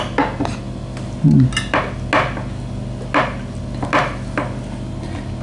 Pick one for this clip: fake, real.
real